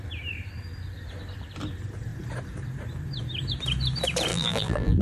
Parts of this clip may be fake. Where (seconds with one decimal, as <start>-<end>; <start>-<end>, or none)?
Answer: 4.3-5.0